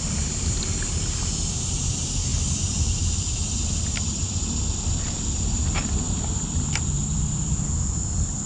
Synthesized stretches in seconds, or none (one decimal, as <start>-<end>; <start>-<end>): none